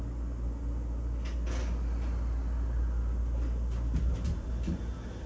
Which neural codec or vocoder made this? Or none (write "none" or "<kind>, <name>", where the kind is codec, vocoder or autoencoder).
none